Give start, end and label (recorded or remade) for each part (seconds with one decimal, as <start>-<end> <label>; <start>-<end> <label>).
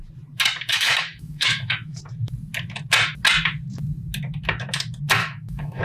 0.0-0.7 recorded; 0.7-2.0 remade; 2.0-5.2 recorded; 5.2-5.8 remade